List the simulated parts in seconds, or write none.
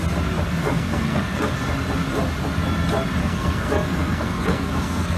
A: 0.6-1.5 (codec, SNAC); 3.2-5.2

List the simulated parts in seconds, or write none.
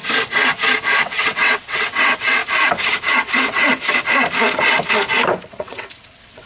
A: 1.0-2.4 (vocoder, WaveNeXt); 3.1-3.7; 5.5-6.5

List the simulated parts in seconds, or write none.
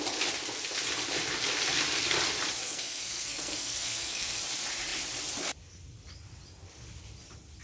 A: 2.6-4.4 (codec, SNAC)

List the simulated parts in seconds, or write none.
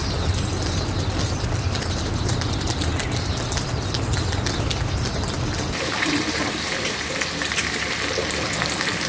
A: 1.2-2.9 (vocoder, BigVGAN v2); 5.4-9.1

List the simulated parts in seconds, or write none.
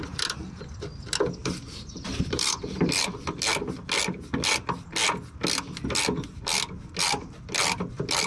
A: 1.4-2.5 (vocoder, BigVGAN v2)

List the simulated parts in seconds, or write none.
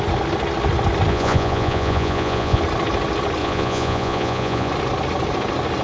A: 1.1-2.6 (vocoder, Vocos); 3.4-4.7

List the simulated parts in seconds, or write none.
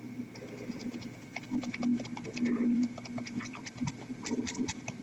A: 1.9-5.0 (vocoder, BigVGAN v2)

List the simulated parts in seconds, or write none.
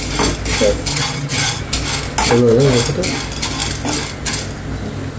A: 0.9-1.6 (vocoder, HiFi-GAN)